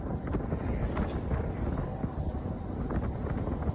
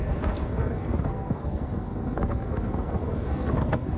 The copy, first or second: second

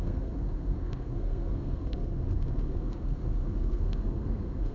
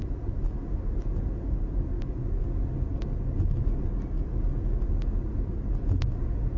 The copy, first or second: first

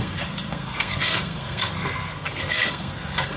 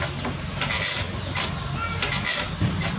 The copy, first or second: first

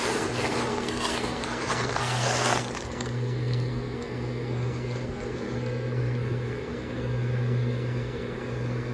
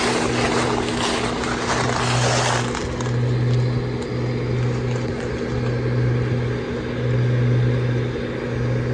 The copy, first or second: first